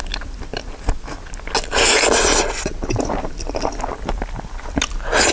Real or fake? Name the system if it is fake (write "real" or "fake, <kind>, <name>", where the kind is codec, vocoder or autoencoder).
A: real